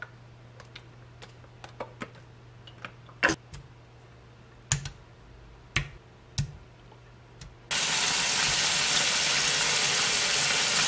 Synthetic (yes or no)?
no